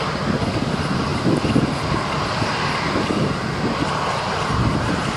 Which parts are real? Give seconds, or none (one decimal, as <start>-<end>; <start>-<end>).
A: 0.0-5.2